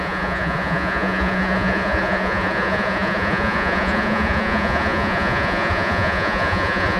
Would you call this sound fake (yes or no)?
yes